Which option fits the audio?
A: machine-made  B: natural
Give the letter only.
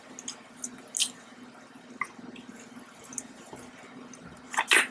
B